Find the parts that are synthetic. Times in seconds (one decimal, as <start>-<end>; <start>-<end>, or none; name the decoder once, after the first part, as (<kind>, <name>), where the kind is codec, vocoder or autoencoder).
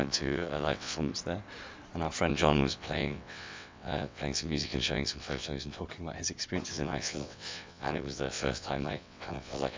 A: 0.0-1.1 (vocoder, WaveNeXt); 2.3-5.8; 6.7-9.8